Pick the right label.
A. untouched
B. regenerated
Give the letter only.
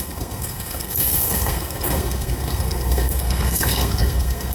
B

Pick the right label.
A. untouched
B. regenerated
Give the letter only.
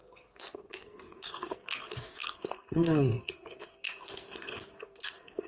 B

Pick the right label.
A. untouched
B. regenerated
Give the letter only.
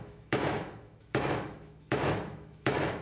B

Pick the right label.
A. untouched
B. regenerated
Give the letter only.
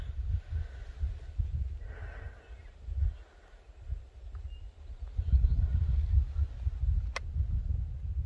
A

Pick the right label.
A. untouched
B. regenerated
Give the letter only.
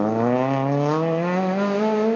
A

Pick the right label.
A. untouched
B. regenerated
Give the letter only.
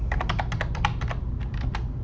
A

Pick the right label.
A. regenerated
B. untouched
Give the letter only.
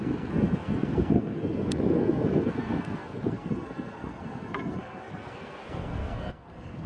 A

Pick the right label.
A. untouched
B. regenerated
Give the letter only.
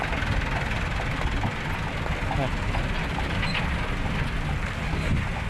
A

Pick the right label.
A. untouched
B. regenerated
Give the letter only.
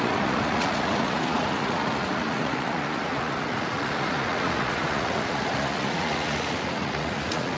B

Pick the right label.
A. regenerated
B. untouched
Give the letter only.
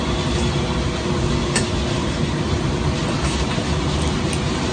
B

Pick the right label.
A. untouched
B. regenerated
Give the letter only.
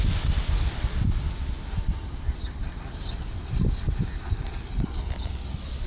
A